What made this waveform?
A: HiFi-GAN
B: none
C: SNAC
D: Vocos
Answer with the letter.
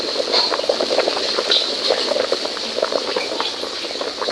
B